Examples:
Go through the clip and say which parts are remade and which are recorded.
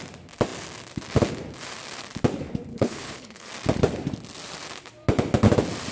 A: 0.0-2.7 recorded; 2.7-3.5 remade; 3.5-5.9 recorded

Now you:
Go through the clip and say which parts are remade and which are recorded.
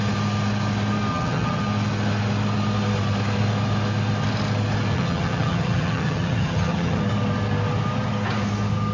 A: 0.0-1.1 recorded; 1.1-1.6 remade; 1.6-4.9 recorded; 4.9-7.0 remade; 7.0-8.9 recorded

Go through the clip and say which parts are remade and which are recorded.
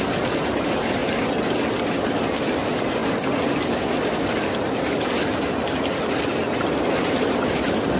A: 0.0-8.0 recorded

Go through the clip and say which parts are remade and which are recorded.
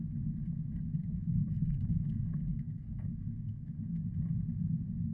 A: 0.0-1.0 recorded; 1.0-4.0 remade; 4.0-5.1 recorded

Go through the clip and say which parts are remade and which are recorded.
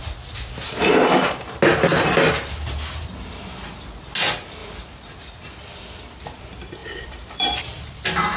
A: 0.0-1.7 recorded; 1.7-4.1 remade; 4.1-6.8 recorded; 6.8-7.8 remade; 7.8-8.4 recorded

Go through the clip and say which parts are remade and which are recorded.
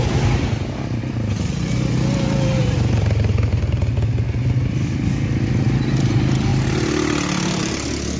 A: 0.0-2.6 recorded; 2.6-3.8 remade; 3.8-8.2 recorded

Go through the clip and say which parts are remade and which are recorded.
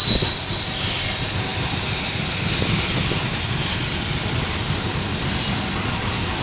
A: 0.0-6.4 recorded